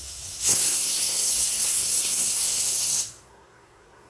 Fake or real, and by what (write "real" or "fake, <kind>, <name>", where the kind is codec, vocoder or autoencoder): fake, codec, SNAC